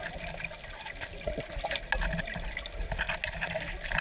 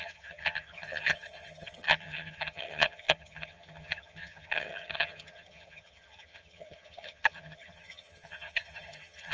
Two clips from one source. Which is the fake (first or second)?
second